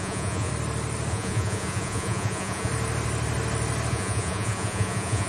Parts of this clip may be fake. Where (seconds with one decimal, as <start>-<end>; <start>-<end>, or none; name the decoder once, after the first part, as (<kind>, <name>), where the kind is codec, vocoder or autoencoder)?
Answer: 0.0-0.5 (vocoder, Vocos); 1.1-2.7; 3.9-5.3